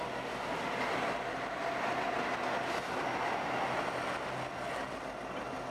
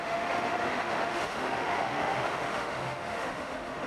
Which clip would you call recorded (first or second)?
first